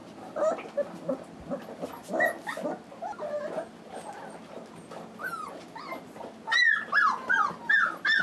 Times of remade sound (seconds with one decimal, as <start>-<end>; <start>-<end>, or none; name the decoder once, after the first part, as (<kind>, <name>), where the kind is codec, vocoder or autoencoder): none